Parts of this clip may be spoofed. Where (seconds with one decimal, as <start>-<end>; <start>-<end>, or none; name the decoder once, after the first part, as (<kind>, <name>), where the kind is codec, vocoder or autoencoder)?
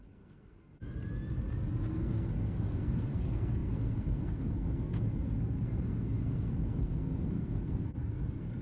0.0-0.8 (codec, SNAC); 1.9-8.6